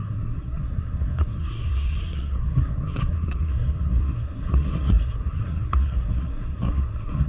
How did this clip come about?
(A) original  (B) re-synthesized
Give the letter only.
B